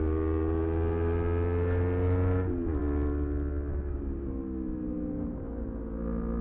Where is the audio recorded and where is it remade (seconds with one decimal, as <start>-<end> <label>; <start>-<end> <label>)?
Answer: 0.0-6.4 recorded